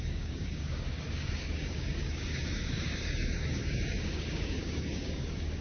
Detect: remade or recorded remade